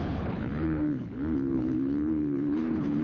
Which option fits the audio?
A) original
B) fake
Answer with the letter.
B